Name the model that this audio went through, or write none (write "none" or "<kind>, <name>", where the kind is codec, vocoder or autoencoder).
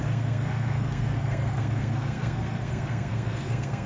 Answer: codec, SNAC